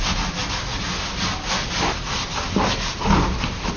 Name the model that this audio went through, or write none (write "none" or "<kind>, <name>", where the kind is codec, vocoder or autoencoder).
none